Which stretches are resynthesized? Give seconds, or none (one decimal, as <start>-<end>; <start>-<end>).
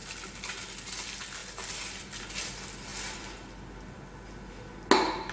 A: 1.4-2.2; 2.9-4.0